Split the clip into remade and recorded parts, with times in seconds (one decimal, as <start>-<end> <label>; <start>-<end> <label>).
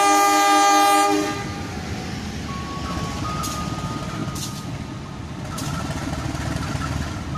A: 0.0-7.4 recorded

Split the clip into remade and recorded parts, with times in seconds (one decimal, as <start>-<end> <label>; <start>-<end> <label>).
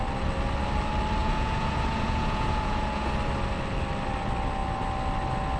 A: 0.0-1.2 recorded; 1.2-3.1 remade; 3.1-5.6 recorded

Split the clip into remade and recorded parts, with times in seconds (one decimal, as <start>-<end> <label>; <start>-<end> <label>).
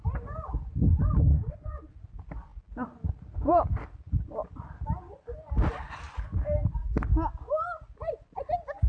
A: 0.0-1.3 recorded; 1.3-1.9 remade; 1.9-8.9 recorded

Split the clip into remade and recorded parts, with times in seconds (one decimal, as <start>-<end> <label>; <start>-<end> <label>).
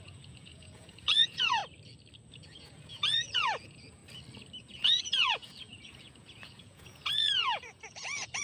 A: 0.0-1.6 remade; 1.6-2.3 recorded; 2.3-4.0 remade; 4.0-4.6 recorded; 4.6-8.4 remade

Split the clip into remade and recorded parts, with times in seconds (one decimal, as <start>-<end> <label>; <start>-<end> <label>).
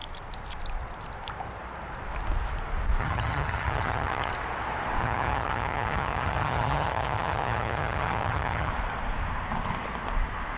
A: 0.0-3.0 recorded; 3.0-4.3 remade; 4.3-5.0 recorded; 5.0-8.7 remade; 8.7-10.6 recorded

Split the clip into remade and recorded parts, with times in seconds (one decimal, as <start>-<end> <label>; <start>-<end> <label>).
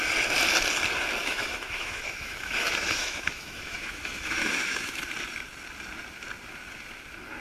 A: 0.0-1.2 recorded; 1.2-5.0 remade; 5.0-7.4 recorded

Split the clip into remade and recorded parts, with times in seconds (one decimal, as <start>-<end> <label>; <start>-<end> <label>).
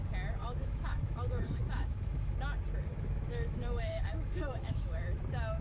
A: 0.0-0.4 recorded; 0.4-2.3 remade; 2.3-2.9 recorded; 2.9-5.0 remade; 5.0-5.6 recorded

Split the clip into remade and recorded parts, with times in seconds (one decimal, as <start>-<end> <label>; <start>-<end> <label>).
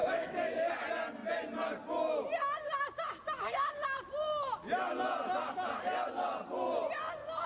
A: 0.0-0.7 remade; 0.7-7.5 recorded